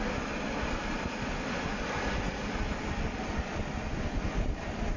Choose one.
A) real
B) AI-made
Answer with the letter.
A